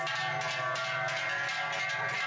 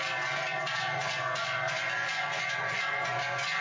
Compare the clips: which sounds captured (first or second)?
first